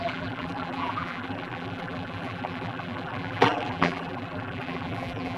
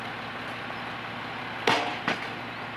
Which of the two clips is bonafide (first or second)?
second